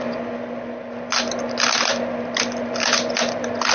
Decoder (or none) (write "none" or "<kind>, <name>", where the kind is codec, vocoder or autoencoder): none